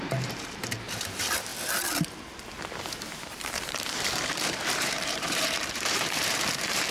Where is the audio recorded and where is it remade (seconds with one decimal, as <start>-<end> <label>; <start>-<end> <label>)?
0.0-1.5 remade; 1.5-2.9 recorded; 2.9-6.9 remade